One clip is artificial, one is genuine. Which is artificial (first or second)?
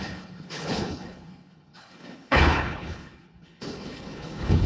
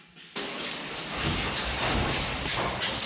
first